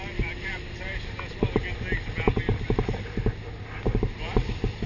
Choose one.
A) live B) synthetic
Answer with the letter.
A